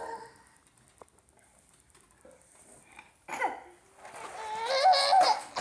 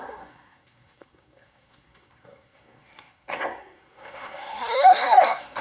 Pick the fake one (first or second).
second